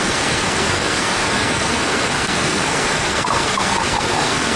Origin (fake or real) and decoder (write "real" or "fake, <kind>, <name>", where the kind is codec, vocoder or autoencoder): fake, codec, SNAC